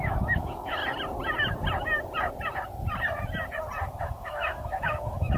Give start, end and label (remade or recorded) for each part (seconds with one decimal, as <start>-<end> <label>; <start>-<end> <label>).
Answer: 0.0-0.8 remade; 0.8-4.0 recorded; 4.0-5.4 remade